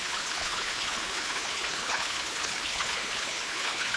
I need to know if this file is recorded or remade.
remade